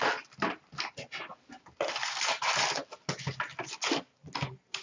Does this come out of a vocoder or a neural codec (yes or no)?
no